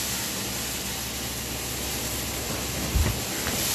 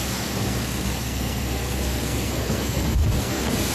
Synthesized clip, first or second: second